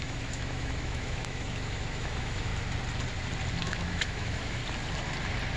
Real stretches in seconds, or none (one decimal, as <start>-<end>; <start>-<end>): 2.5-3.6; 4.6-5.6